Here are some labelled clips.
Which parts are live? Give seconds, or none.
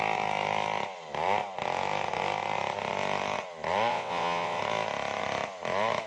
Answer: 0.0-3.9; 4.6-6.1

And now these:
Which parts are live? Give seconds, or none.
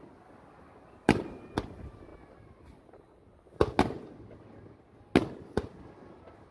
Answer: 0.0-6.5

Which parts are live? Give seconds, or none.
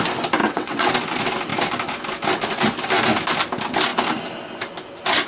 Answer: 0.0-0.4; 0.9-5.3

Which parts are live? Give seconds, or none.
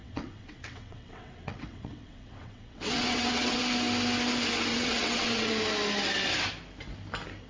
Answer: 3.6-4.7; 5.5-7.5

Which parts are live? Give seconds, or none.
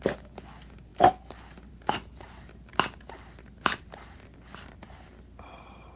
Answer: 0.0-6.0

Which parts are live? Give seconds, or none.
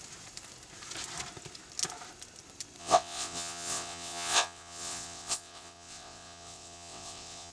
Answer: 0.0-2.8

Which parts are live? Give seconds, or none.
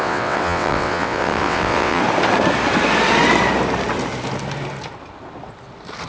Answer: 2.0-6.1